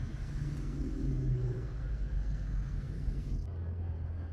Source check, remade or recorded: remade